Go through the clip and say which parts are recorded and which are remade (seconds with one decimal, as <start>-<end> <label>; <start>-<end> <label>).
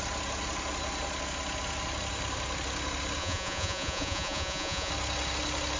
0.0-3.2 recorded; 3.2-4.9 remade; 4.9-5.8 recorded